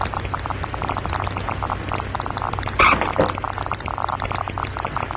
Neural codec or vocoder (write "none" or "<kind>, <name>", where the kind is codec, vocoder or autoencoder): none